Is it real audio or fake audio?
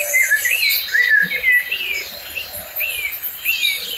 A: real